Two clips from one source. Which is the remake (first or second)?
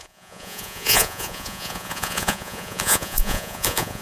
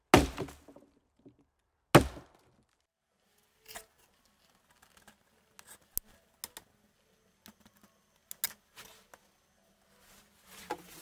first